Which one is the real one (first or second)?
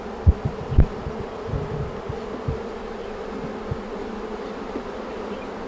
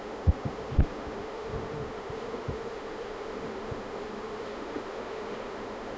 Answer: first